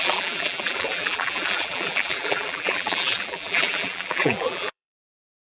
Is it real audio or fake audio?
fake